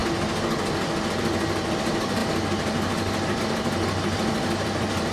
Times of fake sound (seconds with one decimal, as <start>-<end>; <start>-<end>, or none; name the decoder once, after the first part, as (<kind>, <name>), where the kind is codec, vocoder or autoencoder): 1.1-5.1 (vocoder, BigVGAN v2)